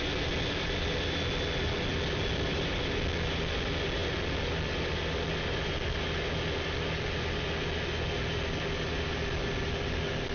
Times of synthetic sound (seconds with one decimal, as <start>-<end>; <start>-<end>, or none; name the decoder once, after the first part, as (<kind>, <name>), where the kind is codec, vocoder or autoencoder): none